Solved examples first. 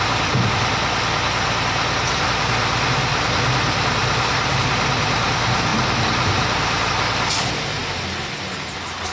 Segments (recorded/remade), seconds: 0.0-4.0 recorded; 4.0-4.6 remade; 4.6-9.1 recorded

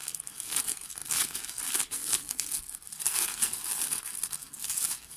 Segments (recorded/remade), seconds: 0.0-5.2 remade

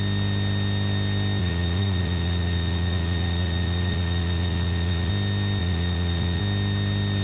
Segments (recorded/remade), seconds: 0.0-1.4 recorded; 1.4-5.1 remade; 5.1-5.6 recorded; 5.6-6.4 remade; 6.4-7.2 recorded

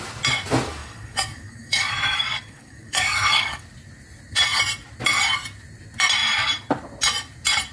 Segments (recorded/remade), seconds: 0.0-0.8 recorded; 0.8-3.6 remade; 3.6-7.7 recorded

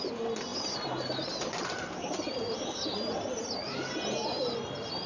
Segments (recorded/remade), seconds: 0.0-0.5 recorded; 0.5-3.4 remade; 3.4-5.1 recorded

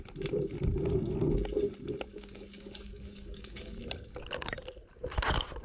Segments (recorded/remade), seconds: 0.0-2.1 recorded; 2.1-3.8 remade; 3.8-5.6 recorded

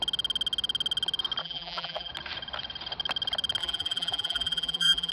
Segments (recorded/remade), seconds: 0.0-1.4 recorded; 1.4-2.1 remade; 2.1-3.6 recorded; 3.6-5.1 remade